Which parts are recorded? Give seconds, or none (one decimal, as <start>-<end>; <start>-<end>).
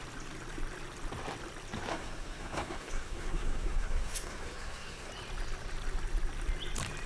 0.0-1.9; 5.1-7.1